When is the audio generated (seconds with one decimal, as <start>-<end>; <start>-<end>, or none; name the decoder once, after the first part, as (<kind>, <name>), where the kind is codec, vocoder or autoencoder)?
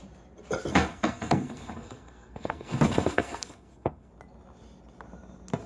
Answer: 0.7-4.1 (codec, SNAC)